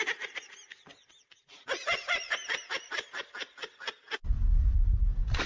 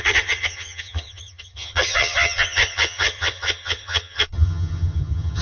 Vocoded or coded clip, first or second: second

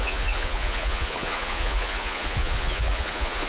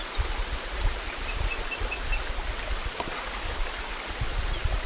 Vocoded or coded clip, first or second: first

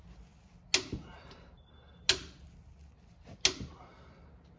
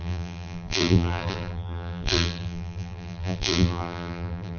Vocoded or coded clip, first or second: second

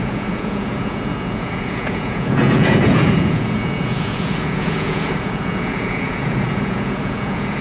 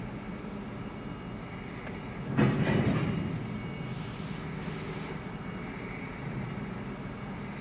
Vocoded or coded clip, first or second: first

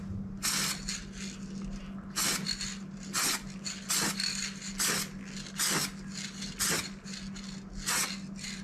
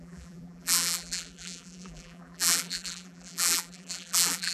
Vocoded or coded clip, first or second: second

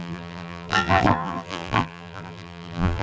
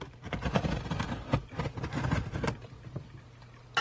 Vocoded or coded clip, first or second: first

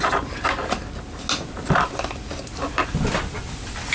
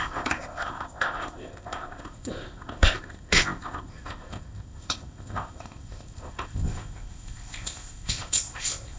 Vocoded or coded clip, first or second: second